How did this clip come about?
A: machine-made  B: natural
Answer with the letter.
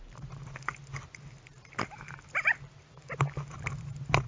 B